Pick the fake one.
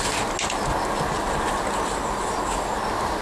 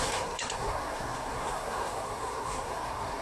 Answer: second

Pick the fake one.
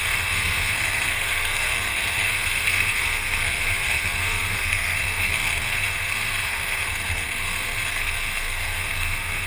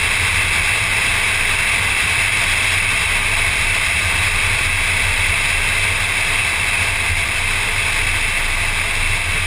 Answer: first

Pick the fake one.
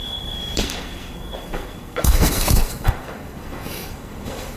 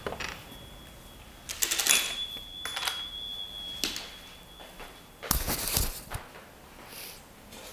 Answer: first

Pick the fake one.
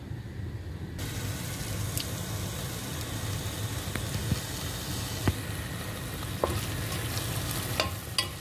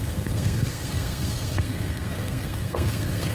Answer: second